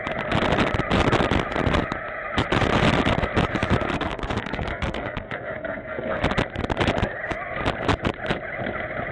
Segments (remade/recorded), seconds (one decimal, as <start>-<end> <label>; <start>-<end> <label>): 0.0-3.9 recorded; 3.9-6.2 remade; 6.2-9.1 recorded